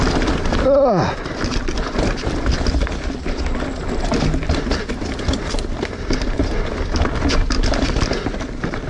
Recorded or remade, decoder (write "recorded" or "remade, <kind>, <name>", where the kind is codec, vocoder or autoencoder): recorded